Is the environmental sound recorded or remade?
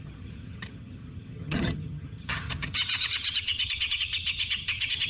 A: remade